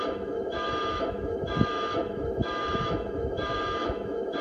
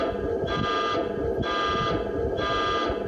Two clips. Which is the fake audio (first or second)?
first